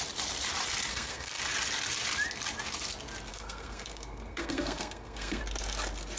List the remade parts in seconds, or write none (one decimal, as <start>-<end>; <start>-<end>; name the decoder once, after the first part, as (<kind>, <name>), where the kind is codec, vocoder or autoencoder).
0.9-1.4 (codec, SNAC); 3.3-5.4